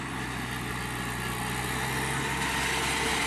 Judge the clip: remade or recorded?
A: recorded